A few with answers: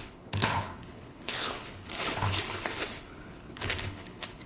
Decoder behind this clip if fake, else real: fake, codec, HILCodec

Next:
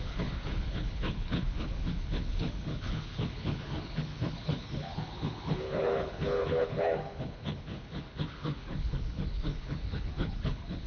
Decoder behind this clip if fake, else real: fake, codec, HILCodec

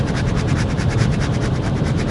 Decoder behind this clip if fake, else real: real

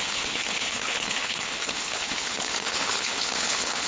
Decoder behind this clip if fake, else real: fake, codec, HILCodec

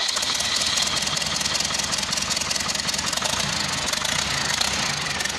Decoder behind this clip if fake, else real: real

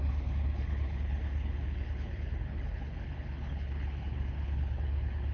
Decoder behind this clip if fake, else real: fake, codec, HILCodec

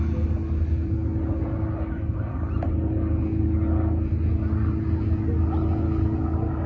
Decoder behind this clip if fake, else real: real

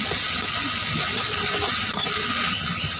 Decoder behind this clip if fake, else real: real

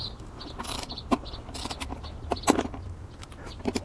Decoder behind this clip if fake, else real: real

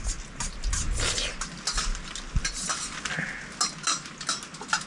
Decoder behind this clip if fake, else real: real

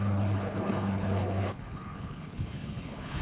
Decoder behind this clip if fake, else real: fake, codec, HILCodec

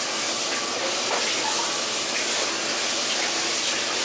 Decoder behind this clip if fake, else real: real